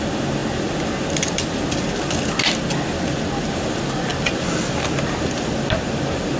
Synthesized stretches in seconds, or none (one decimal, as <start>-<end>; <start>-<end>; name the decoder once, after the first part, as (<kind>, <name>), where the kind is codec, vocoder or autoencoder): none